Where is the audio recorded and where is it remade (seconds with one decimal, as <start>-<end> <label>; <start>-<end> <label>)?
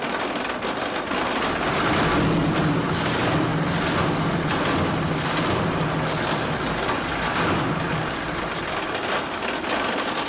0.0-10.3 recorded